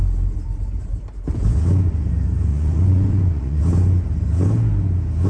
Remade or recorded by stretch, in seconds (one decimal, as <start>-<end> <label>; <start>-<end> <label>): 0.0-2.5 recorded; 2.5-3.6 remade; 3.6-5.3 recorded